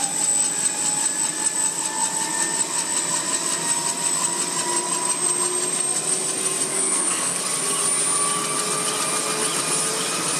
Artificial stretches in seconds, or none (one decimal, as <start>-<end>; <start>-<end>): 6.7-7.4